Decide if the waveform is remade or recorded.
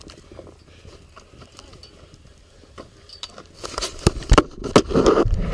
recorded